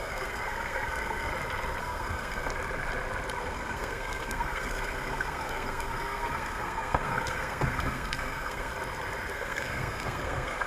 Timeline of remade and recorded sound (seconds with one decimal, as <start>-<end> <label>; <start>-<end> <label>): 0.0-1.3 remade; 1.3-1.8 recorded; 1.8-2.4 remade; 2.4-3.4 recorded; 3.4-8.7 remade; 8.7-9.3 recorded; 9.3-10.7 remade